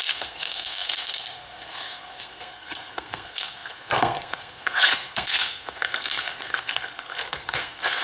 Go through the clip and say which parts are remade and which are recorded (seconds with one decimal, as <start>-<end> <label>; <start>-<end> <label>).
0.0-8.0 remade